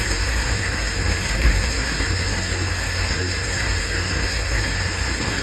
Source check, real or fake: fake